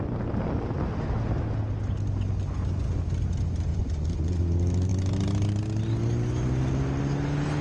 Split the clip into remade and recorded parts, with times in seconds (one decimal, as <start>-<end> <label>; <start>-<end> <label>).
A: 0.0-3.7 recorded; 3.7-4.4 remade; 4.4-7.6 recorded